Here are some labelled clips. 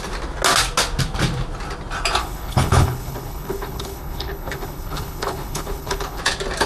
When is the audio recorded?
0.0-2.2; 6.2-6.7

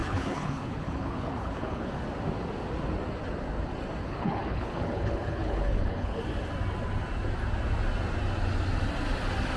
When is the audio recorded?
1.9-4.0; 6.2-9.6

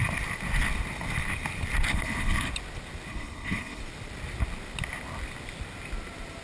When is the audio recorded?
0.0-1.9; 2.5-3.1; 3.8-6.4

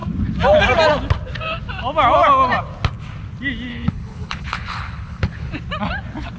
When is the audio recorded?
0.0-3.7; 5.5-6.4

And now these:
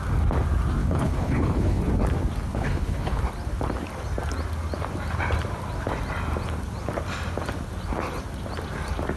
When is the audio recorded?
0.0-0.8; 1.8-2.5; 3.2-9.2

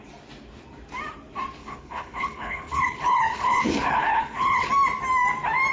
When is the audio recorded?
0.0-1.6; 4.7-5.7

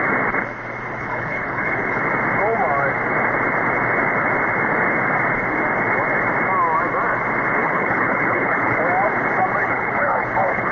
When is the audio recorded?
0.0-1.0; 2.0-7.6; 8.8-9.6

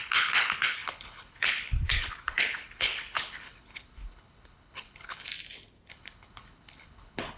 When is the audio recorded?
5.3-5.9